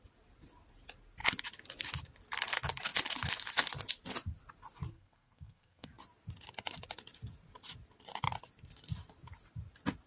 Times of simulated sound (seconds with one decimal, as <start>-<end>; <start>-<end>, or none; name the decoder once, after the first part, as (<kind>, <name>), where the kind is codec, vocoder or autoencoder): 4.9-5.9 (codec, SNAC)